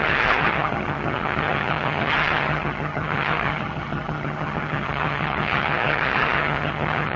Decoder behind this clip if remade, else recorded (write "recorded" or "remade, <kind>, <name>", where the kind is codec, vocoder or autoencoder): remade, vocoder, HiFi-GAN